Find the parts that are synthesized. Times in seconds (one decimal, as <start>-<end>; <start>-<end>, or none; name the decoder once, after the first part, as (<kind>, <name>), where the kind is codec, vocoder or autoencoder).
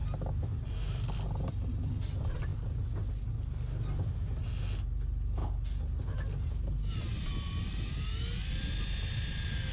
none